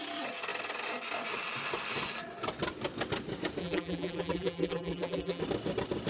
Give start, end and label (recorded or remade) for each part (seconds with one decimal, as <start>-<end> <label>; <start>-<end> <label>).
0.0-3.6 recorded; 3.6-5.4 remade; 5.4-6.1 recorded